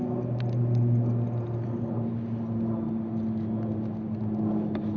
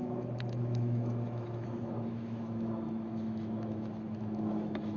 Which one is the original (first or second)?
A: first